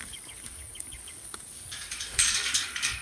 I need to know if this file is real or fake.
fake